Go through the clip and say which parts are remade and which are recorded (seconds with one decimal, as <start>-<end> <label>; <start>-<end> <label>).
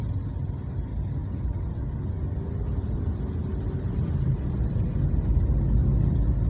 0.0-6.5 recorded